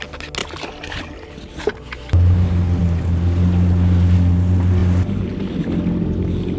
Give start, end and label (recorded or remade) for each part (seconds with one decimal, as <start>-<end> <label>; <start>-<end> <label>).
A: 0.0-6.6 recorded